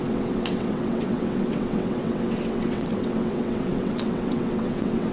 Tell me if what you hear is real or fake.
fake